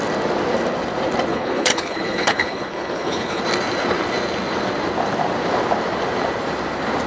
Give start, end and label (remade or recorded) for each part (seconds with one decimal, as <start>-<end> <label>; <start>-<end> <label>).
0.0-1.3 recorded; 1.3-3.4 remade; 3.4-7.1 recorded